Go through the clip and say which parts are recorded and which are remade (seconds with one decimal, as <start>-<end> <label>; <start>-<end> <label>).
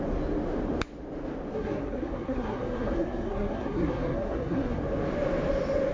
0.0-1.5 recorded; 1.5-4.8 remade; 4.8-5.9 recorded